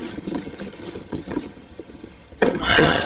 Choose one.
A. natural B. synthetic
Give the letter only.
B